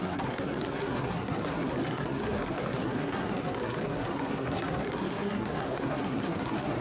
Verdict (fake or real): fake